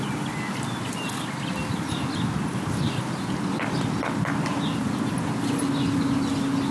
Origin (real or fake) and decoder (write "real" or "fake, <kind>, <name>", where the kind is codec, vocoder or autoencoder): real